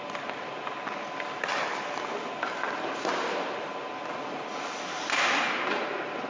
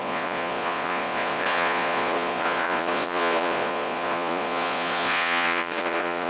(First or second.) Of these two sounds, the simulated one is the second